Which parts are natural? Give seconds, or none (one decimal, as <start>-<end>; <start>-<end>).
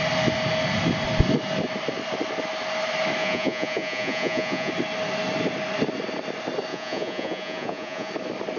0.0-3.2; 4.7-6.7; 8.1-8.6